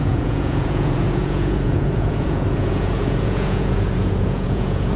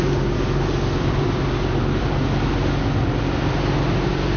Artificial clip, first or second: first